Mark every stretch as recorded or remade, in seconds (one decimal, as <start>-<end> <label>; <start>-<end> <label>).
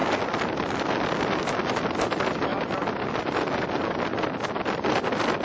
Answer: 0.0-5.4 recorded